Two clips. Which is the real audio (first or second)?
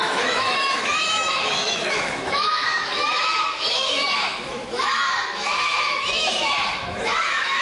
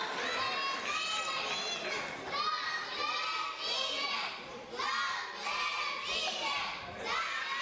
second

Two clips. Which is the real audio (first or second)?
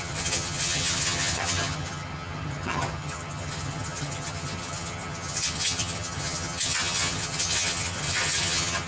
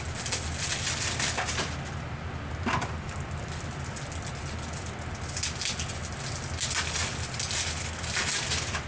second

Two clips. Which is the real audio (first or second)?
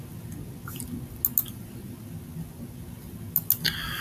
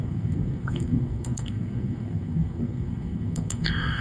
first